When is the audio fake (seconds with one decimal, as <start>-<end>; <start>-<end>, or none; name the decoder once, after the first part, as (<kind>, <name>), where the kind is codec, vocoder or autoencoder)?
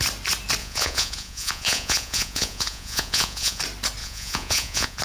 0.6-3.6 (vocoder, Vocos); 4.0-5.0